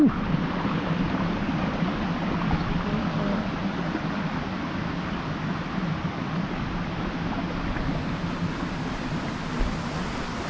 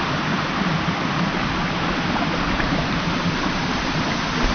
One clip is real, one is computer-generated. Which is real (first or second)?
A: first